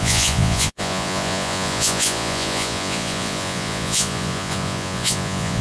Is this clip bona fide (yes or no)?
no